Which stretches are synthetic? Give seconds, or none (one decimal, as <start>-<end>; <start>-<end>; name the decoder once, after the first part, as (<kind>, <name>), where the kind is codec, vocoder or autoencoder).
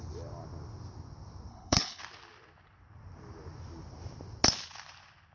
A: 1.5-2.0 (codec, HILCodec)